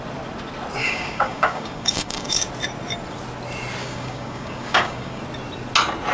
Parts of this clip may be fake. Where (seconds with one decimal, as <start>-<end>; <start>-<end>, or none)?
0.8-2.5; 3.8-5.2